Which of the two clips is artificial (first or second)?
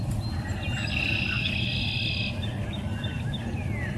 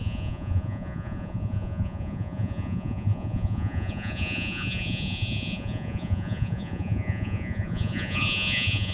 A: second